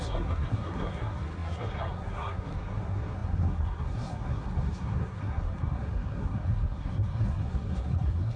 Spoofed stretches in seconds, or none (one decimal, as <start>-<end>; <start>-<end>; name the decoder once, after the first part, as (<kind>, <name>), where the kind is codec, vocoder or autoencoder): 0.0-8.4 (codec, SNAC)